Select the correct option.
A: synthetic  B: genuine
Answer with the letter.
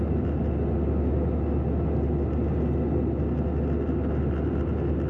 B